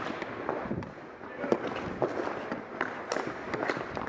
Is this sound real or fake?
real